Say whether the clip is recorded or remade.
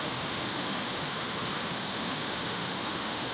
remade